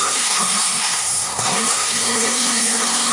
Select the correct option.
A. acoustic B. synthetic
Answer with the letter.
B